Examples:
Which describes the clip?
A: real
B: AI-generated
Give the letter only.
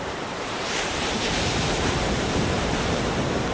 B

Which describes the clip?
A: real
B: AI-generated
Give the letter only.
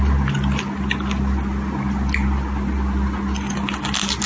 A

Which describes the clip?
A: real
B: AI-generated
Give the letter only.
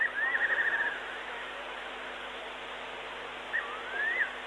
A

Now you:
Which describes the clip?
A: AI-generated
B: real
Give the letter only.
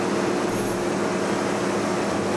B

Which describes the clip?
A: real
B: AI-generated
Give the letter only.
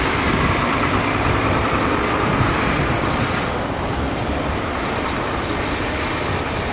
B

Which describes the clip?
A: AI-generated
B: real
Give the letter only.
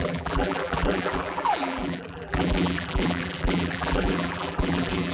A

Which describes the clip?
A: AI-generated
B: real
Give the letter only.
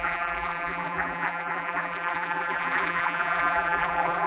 A